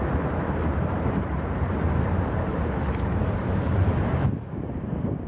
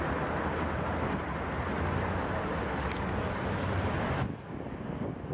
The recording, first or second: second